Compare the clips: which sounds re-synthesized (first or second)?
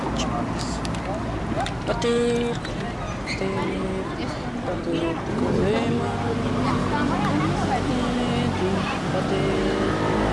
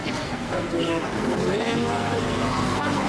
second